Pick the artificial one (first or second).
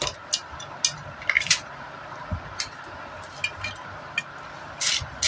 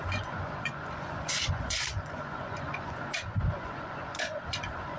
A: second